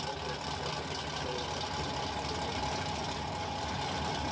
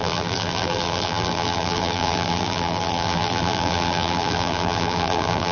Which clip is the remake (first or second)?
second